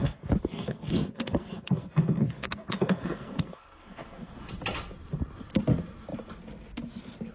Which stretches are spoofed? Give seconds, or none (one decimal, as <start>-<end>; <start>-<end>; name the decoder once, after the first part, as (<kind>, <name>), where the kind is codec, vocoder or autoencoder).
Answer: 0.0-4.4 (codec, SNAC)